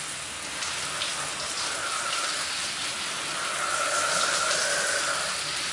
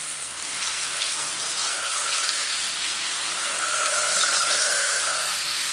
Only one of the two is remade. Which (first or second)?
second